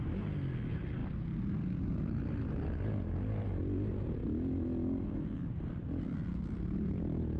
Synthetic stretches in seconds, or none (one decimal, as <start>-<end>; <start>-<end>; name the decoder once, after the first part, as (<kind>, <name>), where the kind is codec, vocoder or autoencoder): none